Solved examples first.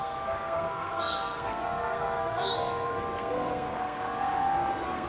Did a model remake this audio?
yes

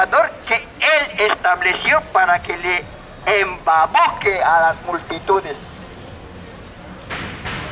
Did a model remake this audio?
no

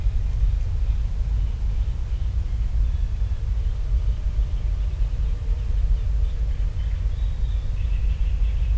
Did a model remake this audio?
no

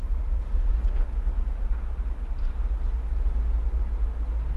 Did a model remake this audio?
no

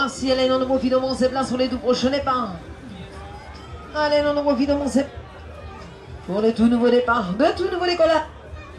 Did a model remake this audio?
no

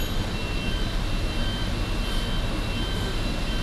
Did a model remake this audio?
no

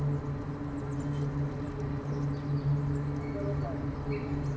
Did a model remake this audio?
no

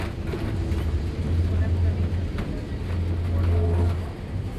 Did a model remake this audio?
no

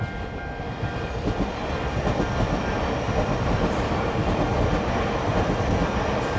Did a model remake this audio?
no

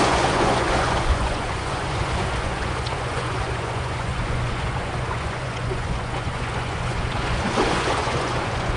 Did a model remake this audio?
yes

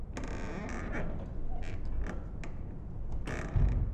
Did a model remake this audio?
no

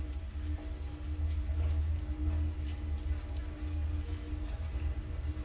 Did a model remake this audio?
no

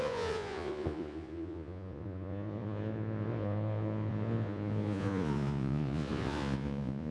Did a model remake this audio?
yes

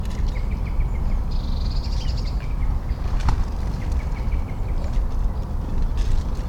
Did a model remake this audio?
no